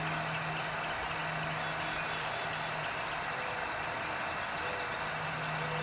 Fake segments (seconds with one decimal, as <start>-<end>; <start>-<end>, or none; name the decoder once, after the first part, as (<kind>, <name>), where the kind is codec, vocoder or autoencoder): none